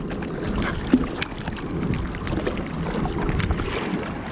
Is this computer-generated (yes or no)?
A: no